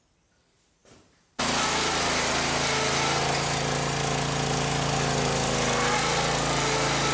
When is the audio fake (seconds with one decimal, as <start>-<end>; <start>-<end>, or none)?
0.8-1.4